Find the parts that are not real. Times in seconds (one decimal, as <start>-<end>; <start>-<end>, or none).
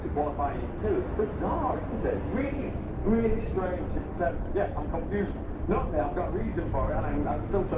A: none